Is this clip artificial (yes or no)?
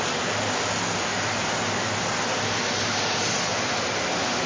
no